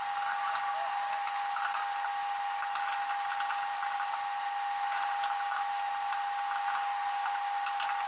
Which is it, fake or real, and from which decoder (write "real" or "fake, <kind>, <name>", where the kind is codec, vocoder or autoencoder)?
real